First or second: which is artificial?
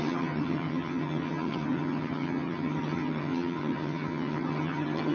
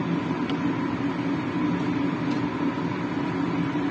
first